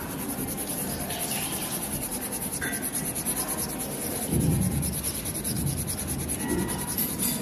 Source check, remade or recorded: recorded